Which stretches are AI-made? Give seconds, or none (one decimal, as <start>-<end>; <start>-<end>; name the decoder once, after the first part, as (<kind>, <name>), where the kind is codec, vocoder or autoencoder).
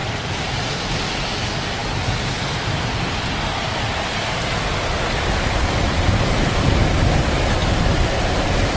0.0-0.8 (vocoder, BigVGAN v2); 7.6-8.8